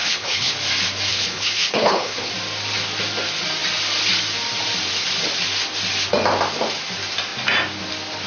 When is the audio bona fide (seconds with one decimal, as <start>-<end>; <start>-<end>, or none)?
0.5-1.1; 2.3-8.3